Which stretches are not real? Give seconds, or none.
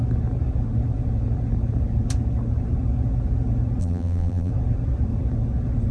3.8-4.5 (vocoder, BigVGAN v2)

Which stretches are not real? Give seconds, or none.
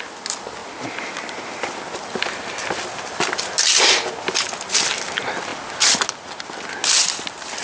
none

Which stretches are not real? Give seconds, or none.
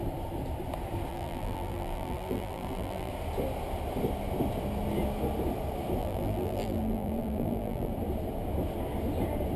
1.1-3.1 (vocoder, BigVGAN v2); 6.0-7.9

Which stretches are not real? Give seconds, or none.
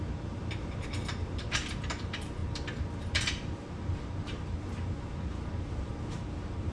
0.0-2.4 (vocoder, BigVGAN v2); 3.0-6.7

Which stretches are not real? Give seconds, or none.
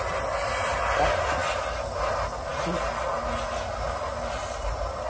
none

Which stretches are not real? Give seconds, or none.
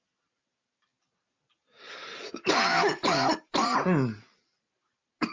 none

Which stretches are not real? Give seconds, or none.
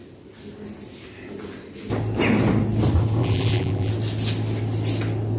3.2-3.9 (vocoder, BigVGAN v2)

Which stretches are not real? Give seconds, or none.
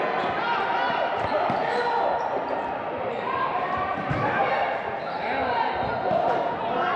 0.7-4.9 (vocoder, BigVGAN v2)